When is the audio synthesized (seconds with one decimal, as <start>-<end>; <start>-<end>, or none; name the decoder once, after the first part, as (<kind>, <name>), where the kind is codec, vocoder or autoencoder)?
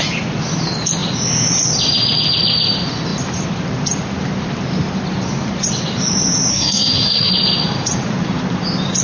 6.5-7.3 (codec, SNAC)